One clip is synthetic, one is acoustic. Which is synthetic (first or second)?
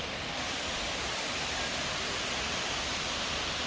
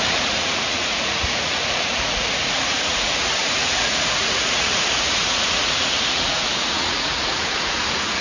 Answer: second